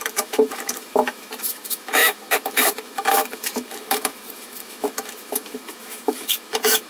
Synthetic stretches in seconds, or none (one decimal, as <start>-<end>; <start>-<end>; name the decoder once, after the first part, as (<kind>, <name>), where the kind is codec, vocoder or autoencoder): 0.0-6.9 (autoencoder, DAC-VAE)